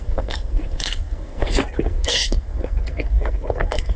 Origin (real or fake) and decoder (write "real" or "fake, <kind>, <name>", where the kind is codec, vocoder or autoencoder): fake, codec, SNAC